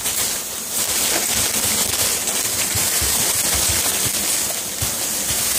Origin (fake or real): real